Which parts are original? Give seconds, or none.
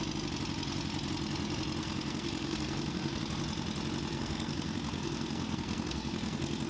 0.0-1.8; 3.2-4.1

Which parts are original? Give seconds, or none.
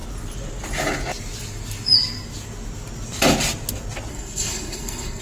0.0-4.1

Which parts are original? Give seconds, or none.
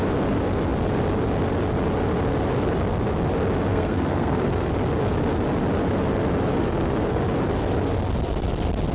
0.0-3.7; 4.7-6.5; 7.2-8.9